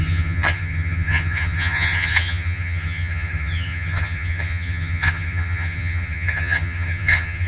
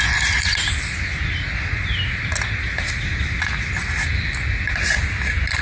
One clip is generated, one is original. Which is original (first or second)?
second